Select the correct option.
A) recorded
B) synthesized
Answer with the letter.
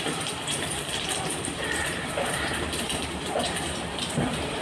B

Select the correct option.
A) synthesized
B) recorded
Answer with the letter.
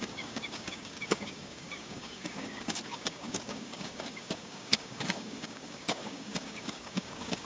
A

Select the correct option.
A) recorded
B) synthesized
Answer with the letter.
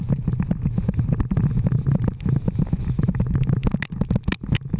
A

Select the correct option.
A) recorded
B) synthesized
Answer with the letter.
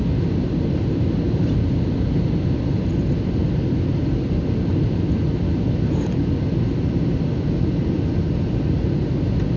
A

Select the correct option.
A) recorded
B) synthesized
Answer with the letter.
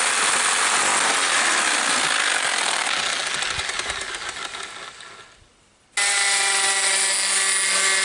A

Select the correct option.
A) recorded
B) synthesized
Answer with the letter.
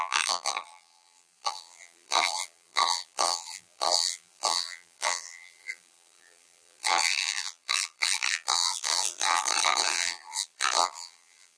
B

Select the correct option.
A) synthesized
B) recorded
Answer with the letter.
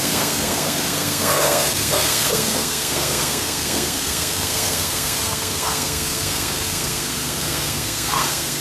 A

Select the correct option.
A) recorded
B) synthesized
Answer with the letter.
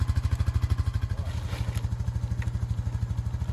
A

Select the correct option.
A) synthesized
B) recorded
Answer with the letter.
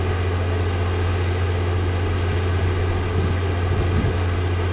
B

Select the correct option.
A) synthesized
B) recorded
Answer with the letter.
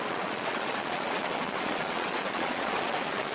A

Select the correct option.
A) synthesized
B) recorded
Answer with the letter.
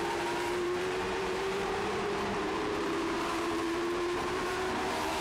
A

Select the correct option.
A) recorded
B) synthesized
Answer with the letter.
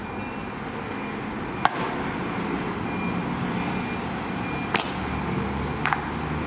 A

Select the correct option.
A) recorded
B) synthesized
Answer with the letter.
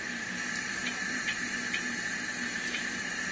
B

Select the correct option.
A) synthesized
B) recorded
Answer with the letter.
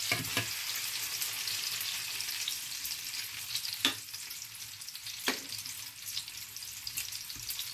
B